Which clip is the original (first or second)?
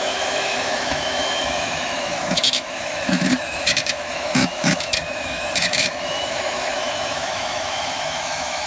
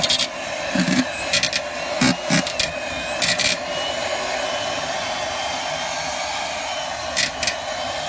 second